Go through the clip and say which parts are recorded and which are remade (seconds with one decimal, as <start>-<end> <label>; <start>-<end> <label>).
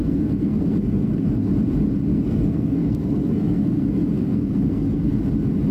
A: 0.0-1.5 remade; 1.5-2.1 recorded; 2.1-5.2 remade; 5.2-5.7 recorded